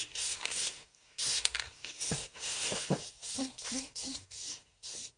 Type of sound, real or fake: fake